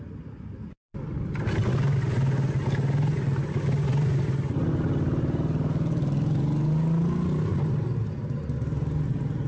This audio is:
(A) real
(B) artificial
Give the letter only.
A